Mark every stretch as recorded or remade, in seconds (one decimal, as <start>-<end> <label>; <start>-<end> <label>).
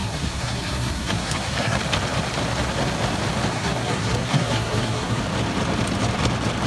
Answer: 0.0-1.8 remade; 1.8-3.5 recorded; 3.5-5.2 remade; 5.2-6.7 recorded